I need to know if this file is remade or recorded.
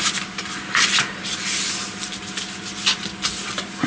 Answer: recorded